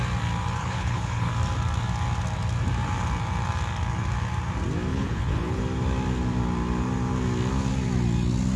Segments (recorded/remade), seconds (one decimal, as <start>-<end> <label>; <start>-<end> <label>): 0.0-0.6 recorded; 0.6-1.3 remade; 1.3-4.9 recorded; 4.9-5.6 remade; 5.6-8.6 recorded